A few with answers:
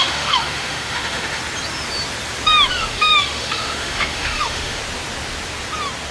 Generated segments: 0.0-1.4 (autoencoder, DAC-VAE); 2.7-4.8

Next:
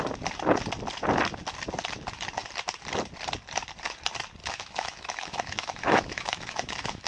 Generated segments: 4.4-7.1 (autoencoder, DAC-VAE)

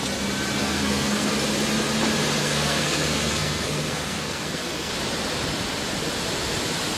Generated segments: 0.6-1.3 (codec, SNAC); 2.4-4.9